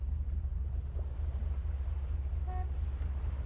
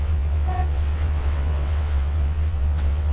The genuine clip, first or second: first